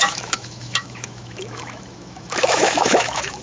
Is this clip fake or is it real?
fake